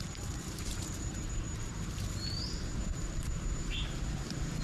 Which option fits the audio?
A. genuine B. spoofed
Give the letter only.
B